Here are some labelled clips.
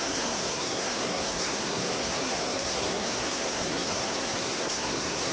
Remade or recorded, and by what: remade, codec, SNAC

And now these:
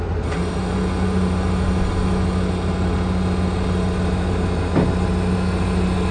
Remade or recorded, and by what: recorded